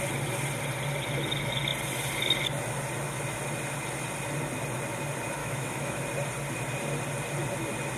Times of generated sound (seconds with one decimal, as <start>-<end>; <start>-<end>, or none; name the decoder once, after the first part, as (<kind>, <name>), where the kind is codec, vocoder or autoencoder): 5.4-6.0 (autoencoder, DAC-VAE)